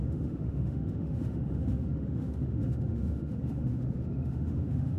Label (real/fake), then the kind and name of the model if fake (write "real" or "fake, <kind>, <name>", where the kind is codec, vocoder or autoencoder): fake, autoencoder, DAC-VAE